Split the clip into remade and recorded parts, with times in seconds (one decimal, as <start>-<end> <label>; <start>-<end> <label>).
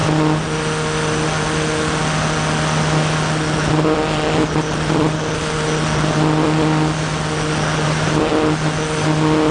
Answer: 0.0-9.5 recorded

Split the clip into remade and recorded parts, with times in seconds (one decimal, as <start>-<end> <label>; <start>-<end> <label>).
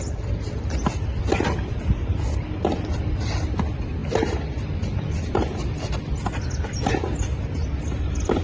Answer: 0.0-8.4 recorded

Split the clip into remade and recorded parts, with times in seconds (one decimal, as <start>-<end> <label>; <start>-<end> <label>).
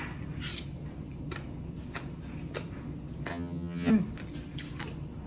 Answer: 0.0-3.3 recorded; 3.3-3.9 remade; 3.9-5.3 recorded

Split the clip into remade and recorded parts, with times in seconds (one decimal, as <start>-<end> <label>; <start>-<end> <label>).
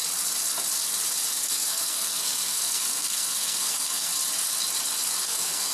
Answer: 0.0-1.3 recorded; 1.3-4.1 remade; 4.1-5.2 recorded; 5.2-5.7 remade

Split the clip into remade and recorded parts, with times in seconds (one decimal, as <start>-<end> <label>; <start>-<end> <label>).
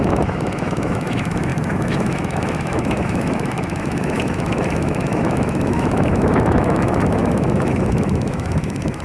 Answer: 0.0-9.0 remade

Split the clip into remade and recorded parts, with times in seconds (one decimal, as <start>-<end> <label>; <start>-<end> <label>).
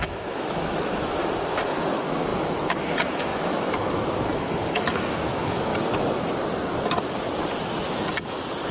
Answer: 0.0-1.2 remade; 1.2-1.9 recorded; 1.9-5.7 remade; 5.7-8.7 recorded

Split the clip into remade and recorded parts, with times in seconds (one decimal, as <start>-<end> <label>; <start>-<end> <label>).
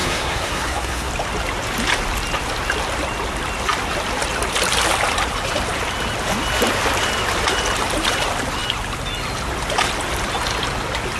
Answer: 0.0-1.1 remade; 1.1-11.2 recorded